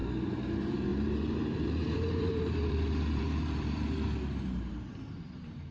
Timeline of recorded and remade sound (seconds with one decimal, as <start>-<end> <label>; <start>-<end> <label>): 0.0-0.5 recorded; 0.5-5.7 remade